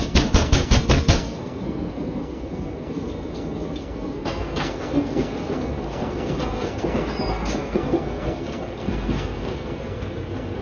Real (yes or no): no